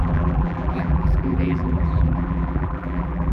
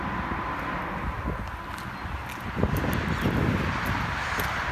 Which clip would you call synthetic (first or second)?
first